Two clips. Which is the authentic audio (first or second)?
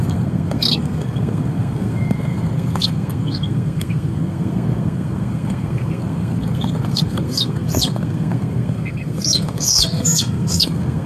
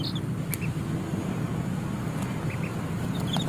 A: second